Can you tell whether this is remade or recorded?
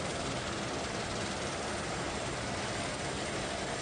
recorded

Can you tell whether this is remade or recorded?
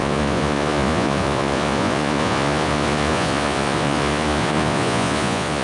remade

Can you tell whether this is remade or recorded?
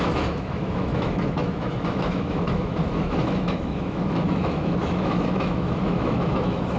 remade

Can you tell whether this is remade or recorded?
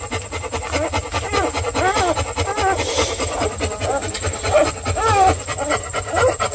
recorded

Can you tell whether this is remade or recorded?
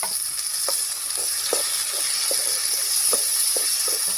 recorded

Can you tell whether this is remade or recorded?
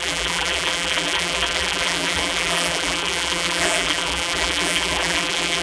remade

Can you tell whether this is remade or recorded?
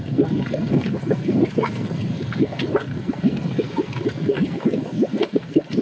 remade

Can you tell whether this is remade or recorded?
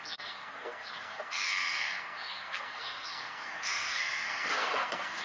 remade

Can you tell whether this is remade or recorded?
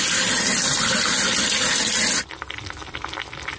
recorded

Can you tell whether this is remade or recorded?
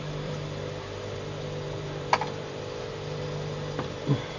remade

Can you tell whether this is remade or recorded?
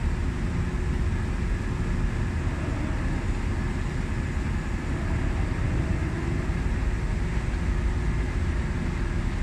recorded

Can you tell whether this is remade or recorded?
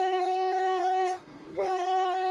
remade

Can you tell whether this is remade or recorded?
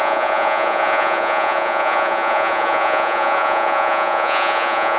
remade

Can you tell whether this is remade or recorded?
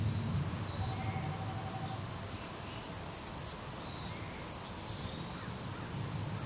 recorded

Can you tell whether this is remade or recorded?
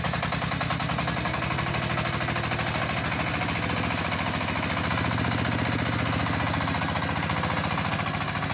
recorded